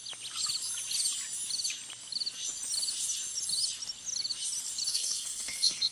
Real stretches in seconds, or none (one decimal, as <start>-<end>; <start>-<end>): 0.0-4.9